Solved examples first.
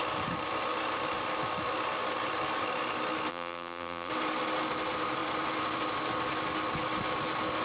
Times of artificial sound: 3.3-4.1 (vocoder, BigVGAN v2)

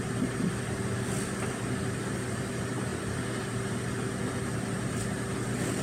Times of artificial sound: none

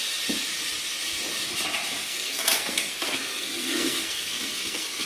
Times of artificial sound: 2.0-5.1 (codec, SNAC)

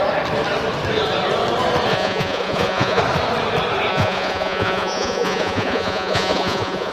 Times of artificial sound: 1.9-3.0 (vocoder, Vocos); 3.9-6.9

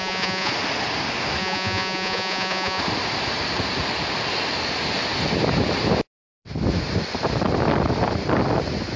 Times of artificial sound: 0.0-0.5 (vocoder, Vocos); 1.4-2.8

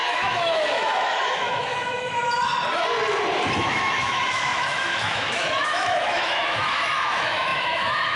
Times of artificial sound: 0.0-2.2 (autoencoder, DAC-VAE); 3.6-8.2

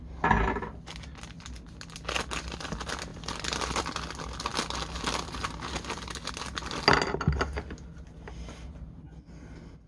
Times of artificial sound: 3.1-3.8 (vocoder, BigVGAN v2)

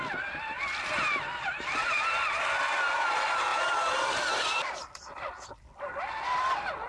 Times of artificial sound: none